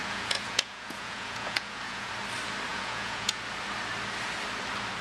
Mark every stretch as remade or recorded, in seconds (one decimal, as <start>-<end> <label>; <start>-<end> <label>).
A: 0.0-2.1 remade; 2.1-2.7 recorded; 2.7-3.4 remade; 3.4-5.0 recorded